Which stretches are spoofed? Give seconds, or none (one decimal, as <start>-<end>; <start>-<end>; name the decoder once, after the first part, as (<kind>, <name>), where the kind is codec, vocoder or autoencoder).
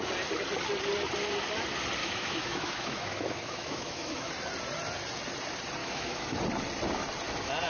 2.0-4.3 (autoencoder, DAC-VAE); 5.8-6.4